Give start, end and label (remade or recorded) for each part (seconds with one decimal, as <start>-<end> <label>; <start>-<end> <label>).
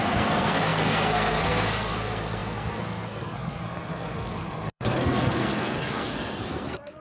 0.0-7.0 remade